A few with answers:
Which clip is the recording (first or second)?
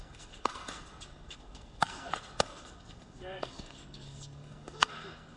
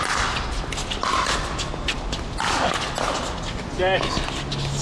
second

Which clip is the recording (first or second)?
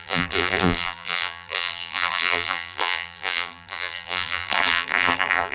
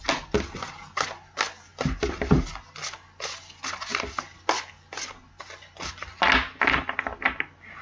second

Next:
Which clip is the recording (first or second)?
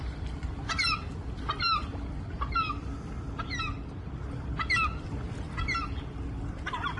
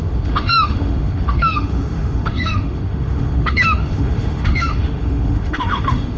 first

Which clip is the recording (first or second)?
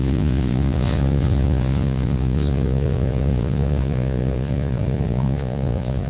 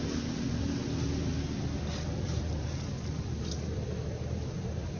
second